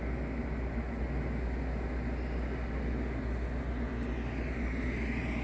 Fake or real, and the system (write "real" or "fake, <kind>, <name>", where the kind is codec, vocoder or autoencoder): real